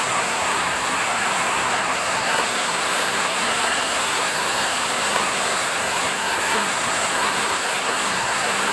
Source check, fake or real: fake